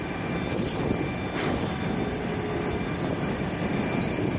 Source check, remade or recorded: recorded